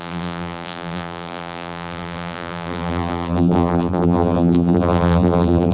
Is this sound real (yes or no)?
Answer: no